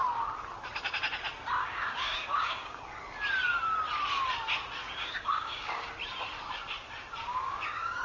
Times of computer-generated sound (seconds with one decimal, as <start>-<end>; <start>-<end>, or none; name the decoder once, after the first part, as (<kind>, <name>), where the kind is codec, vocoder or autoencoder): 1.6-2.8 (codec, DAC); 4.8-5.9; 7.2-8.0